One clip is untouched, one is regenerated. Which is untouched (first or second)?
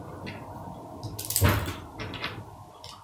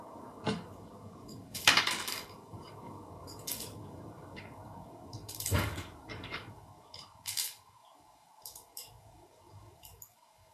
first